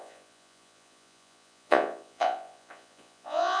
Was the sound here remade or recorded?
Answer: remade